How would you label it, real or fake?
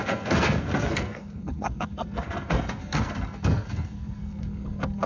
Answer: fake